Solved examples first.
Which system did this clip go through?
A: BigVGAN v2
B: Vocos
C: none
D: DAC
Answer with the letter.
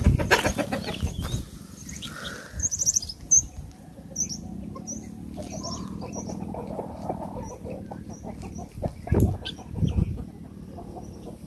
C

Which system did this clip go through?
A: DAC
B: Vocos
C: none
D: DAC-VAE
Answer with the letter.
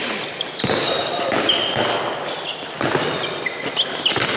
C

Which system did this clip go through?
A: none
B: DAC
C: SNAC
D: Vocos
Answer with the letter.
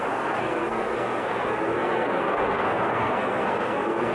C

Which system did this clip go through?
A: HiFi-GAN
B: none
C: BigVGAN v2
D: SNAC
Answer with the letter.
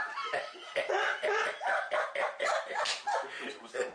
C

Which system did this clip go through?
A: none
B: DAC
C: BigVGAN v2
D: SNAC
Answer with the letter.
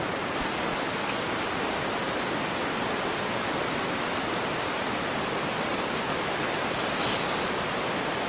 A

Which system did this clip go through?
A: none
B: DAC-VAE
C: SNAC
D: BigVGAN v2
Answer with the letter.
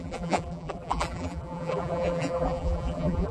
D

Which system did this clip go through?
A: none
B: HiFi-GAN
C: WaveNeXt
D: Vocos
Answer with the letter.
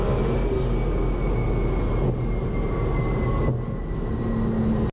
A